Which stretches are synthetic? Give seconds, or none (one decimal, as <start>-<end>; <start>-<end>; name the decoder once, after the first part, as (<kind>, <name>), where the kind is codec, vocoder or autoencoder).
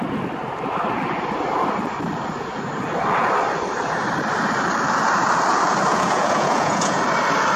5.9-7.0 (vocoder, Vocos)